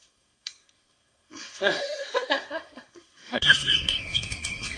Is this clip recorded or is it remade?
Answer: remade